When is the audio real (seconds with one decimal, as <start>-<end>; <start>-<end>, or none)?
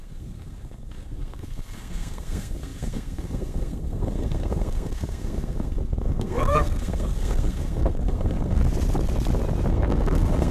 8.6-9.7